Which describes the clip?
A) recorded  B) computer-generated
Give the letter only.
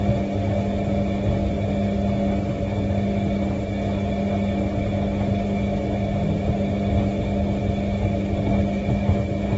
A